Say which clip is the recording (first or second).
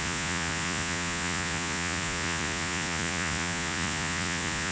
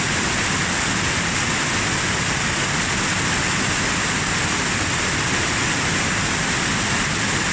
second